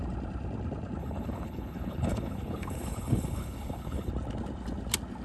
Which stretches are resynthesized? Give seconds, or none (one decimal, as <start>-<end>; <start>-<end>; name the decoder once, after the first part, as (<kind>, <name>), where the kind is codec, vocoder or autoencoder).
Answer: 1.0-4.1 (codec, HILCodec)